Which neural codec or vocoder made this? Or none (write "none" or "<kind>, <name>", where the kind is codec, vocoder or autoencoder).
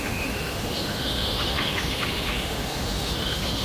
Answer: autoencoder, DAC-VAE